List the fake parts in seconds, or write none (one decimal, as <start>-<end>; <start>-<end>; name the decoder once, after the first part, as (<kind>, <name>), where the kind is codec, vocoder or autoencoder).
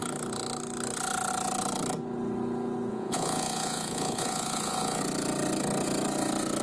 2.9-5.0 (vocoder, Vocos)